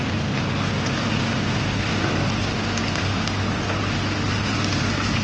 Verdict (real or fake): real